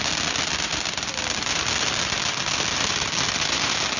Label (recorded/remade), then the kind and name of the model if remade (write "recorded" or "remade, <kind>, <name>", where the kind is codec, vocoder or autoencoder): recorded